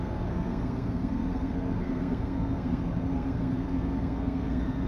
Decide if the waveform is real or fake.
fake